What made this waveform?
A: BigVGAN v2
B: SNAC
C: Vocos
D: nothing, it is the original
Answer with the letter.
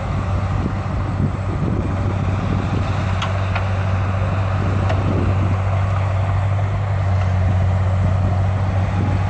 D